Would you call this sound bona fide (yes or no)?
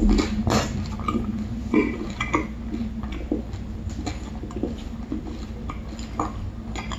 yes